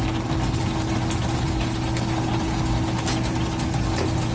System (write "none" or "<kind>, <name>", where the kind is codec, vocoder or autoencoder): none